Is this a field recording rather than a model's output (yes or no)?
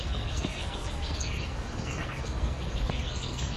no